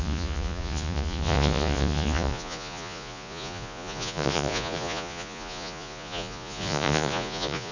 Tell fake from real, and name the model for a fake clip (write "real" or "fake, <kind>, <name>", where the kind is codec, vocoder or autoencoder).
fake, vocoder, Vocos